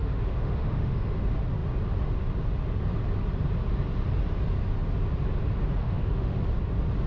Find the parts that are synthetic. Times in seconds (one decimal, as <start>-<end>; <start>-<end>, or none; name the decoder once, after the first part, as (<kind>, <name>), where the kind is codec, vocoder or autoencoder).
0.0-1.1 (autoencoder, DAC-VAE); 5.8-6.4